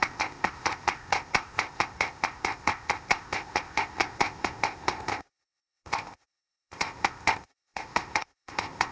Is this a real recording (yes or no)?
no